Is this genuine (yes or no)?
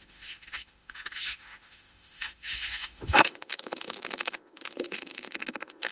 no